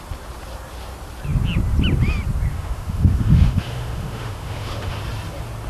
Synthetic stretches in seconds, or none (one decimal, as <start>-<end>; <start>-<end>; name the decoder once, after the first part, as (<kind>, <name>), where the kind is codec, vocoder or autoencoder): 2.5-5.0 (autoencoder, DAC-VAE)